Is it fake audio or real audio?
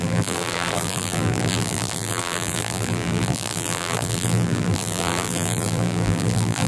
fake